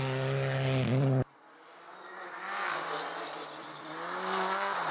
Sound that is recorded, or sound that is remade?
recorded